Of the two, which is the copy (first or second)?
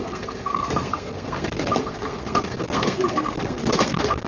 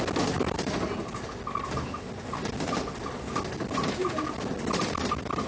first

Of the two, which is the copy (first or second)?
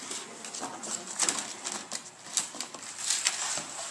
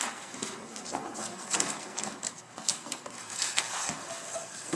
second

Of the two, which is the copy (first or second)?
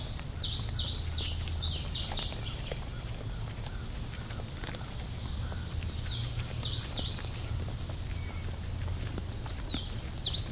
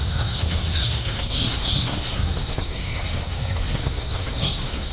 second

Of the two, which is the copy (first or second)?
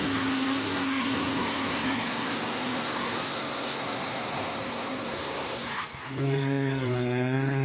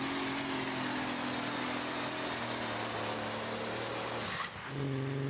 first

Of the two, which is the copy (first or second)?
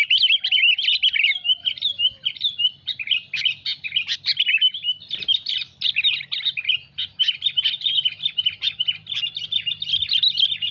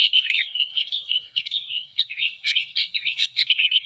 second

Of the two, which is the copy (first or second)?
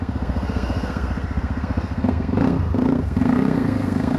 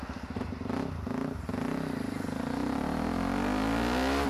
first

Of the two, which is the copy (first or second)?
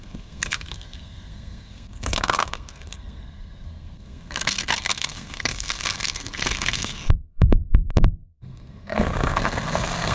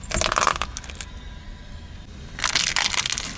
first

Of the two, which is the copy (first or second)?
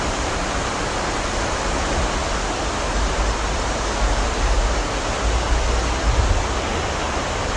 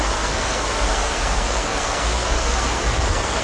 second